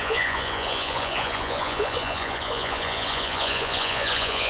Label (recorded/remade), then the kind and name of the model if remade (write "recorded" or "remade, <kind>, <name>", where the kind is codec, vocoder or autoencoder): remade, vocoder, Vocos